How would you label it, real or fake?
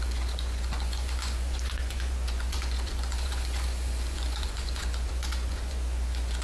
fake